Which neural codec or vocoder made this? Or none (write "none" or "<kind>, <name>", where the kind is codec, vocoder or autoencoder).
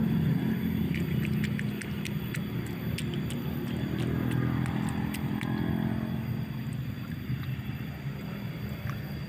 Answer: none